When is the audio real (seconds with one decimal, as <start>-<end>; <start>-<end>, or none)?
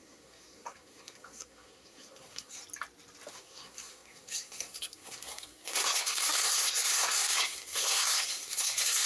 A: 2.6-3.3